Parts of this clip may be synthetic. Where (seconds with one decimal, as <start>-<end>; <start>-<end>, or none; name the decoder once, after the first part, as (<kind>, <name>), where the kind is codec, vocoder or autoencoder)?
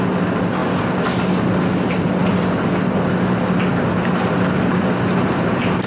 none